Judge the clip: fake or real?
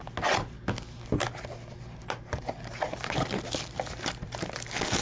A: real